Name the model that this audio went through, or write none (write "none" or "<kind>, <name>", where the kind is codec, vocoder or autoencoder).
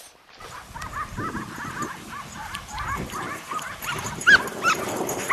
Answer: none